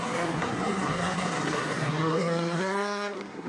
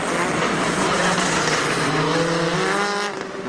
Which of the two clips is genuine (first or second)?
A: second